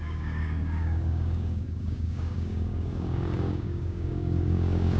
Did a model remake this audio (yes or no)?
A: yes